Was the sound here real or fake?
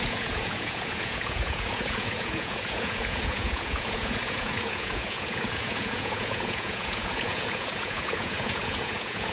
fake